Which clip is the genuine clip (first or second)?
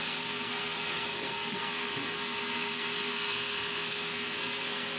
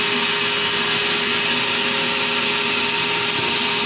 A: second